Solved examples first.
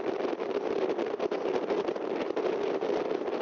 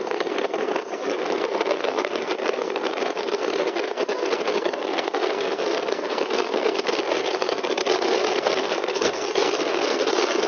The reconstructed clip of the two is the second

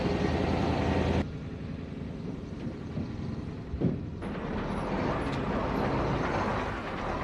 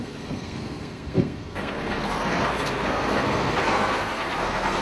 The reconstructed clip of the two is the second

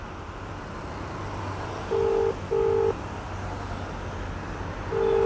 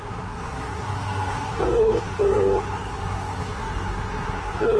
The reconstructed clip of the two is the second